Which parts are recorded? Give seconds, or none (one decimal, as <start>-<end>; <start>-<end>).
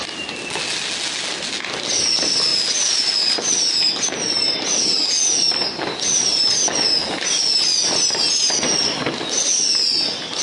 0.0-10.4